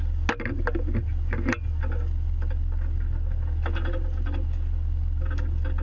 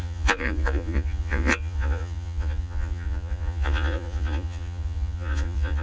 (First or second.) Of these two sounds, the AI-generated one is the second